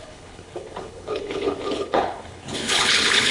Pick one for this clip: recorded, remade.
remade